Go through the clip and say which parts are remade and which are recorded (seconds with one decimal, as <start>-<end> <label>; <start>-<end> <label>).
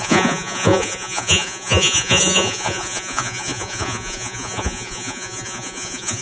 0.0-6.2 remade